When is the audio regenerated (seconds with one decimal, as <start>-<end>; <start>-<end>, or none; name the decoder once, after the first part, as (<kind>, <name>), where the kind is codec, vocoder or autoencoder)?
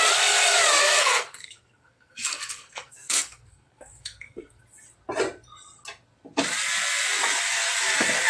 0.8-4.6 (codec, SNAC)